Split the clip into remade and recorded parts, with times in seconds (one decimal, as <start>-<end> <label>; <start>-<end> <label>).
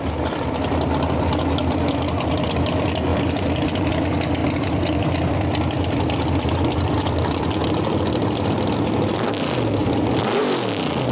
0.0-3.1 recorded; 3.1-3.9 remade; 3.9-4.4 recorded; 4.4-8.7 remade; 8.7-9.8 recorded; 9.8-10.4 remade; 10.4-11.1 recorded